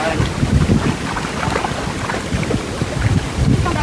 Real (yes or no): yes